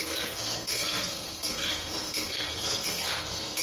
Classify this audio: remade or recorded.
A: remade